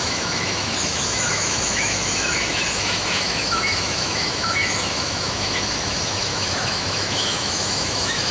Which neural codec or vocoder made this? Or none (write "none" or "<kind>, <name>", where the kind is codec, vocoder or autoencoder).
autoencoder, DAC-VAE